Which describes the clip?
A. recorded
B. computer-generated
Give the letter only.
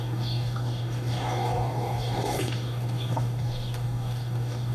B